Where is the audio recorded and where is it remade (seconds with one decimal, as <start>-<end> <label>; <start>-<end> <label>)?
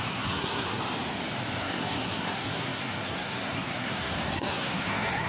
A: 0.0-0.8 remade; 0.8-1.6 recorded; 1.6-5.3 remade